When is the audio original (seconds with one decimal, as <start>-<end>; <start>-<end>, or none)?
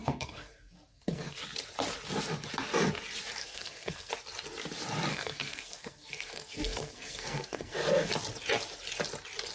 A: 1.4-3.4; 4.1-5.1; 8.1-9.5